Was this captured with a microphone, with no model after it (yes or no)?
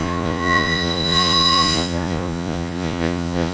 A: no